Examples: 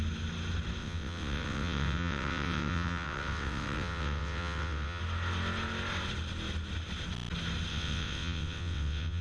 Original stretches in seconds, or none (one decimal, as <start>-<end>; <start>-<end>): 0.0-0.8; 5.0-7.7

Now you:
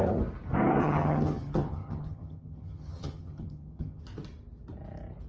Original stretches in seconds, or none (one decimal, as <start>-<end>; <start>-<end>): 0.0-0.8; 4.0-5.3

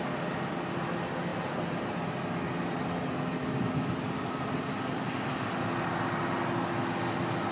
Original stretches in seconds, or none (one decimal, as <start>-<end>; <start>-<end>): 0.0-7.5

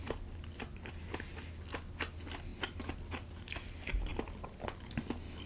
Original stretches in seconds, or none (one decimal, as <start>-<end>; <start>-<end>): 0.0-5.5